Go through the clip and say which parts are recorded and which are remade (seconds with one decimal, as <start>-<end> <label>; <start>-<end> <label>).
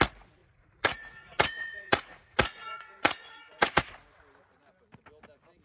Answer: 0.0-0.4 recorded; 0.4-3.8 remade; 3.8-5.6 recorded